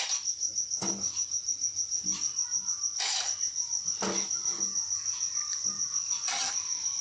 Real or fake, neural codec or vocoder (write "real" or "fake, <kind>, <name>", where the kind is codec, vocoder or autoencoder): real